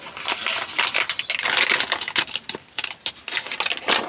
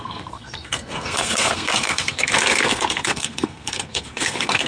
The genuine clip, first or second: first